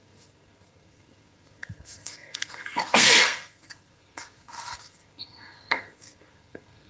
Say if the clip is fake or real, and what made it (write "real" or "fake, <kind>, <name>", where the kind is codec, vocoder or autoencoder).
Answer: fake, codec, SNAC